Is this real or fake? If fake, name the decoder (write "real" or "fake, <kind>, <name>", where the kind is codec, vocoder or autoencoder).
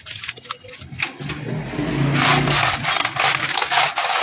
real